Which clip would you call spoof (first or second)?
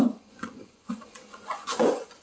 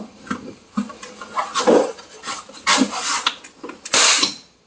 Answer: first